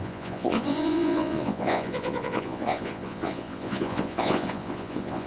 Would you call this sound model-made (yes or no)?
yes